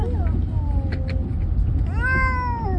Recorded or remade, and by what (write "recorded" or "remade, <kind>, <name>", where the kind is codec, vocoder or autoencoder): recorded